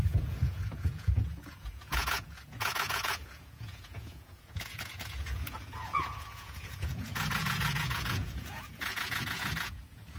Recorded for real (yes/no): no